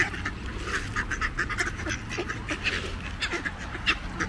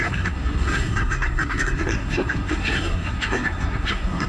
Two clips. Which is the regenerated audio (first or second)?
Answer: second